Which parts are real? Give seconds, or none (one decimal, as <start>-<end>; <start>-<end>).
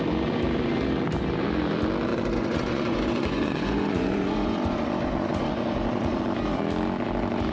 0.0-2.1; 6.2-7.5